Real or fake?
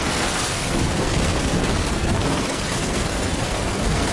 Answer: fake